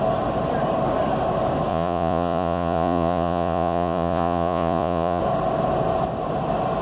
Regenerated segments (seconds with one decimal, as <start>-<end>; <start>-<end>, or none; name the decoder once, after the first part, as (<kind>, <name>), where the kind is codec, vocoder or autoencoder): 1.7-5.2 (vocoder, Vocos)